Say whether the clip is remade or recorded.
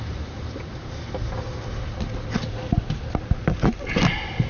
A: recorded